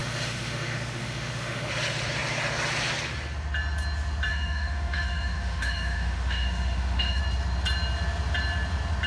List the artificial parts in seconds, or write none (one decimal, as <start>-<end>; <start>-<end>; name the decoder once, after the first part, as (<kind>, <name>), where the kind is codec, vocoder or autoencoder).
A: 0.0-1.7 (autoencoder, DAC-VAE); 4.3-7.2

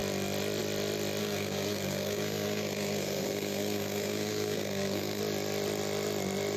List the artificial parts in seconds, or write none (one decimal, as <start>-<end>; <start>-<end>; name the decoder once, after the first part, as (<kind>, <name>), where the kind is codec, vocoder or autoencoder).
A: 1.2-5.2 (codec, SNAC)

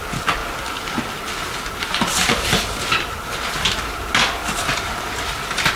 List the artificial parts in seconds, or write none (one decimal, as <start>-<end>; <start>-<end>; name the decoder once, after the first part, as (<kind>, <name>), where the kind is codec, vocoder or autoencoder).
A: 4.4-5.1 (vocoder, BigVGAN v2)

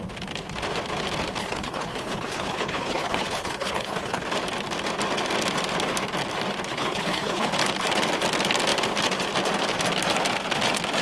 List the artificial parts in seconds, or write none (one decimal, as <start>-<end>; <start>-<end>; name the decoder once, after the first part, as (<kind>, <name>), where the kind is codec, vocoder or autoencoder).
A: 1.4-4.2 (codec, HILCodec); 6.7-7.5

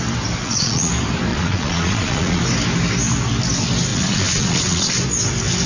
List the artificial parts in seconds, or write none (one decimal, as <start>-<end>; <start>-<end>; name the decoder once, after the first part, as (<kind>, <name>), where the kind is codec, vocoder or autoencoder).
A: 0.4-0.9 (vocoder, Vocos); 1.3-2.4; 3.9-4.9

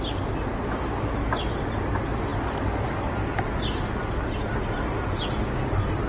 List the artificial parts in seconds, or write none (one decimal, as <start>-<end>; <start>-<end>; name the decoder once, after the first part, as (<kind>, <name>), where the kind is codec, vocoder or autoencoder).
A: none

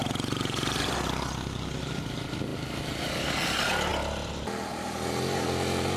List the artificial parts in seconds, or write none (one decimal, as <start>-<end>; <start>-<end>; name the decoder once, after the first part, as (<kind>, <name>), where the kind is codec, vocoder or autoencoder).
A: 0.0-0.9 (vocoder, BigVGAN v2); 2.5-3.3

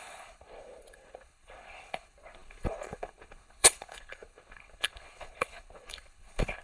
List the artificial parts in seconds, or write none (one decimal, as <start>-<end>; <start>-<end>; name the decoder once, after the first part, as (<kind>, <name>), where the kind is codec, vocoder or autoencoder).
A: 0.0-6.6 (codec, HILCodec)